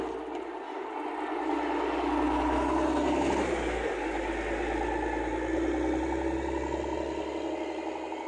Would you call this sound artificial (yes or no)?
no